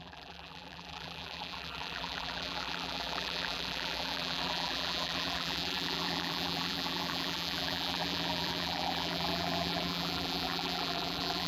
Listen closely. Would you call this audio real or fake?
fake